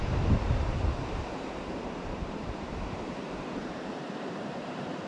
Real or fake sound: fake